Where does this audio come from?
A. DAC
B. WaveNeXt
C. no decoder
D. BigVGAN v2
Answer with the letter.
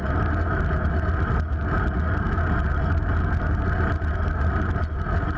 C